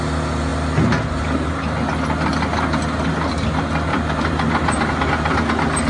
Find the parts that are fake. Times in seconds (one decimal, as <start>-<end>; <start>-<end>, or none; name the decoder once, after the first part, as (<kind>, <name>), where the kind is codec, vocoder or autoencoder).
3.9-4.9 (vocoder, BigVGAN v2)